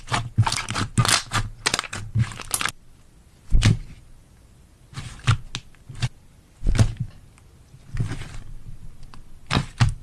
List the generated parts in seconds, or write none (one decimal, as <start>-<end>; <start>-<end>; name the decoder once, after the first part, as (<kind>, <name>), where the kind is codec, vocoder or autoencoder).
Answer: none